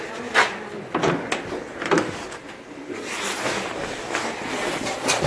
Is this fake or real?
real